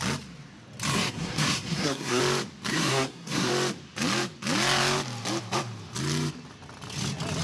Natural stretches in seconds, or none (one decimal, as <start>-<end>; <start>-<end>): 0.0-0.9; 2.2-2.7; 3.5-7.4